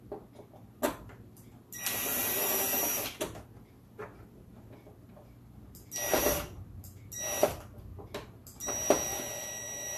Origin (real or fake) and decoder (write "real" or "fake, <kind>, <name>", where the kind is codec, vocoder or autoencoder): real